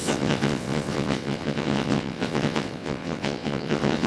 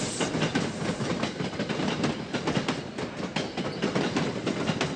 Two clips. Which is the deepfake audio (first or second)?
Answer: first